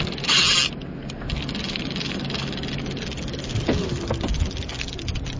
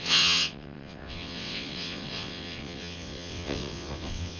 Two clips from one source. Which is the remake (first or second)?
second